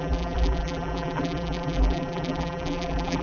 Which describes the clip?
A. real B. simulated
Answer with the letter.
B